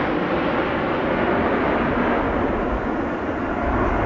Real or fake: real